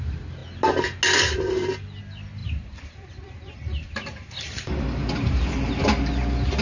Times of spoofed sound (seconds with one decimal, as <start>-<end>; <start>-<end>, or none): 2.4-5.8